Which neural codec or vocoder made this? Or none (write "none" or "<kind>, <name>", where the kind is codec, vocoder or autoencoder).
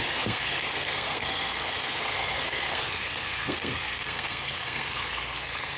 codec, SNAC